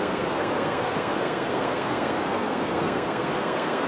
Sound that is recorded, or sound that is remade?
remade